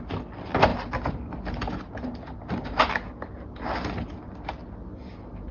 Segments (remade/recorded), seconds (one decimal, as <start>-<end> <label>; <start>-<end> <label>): 0.0-5.5 recorded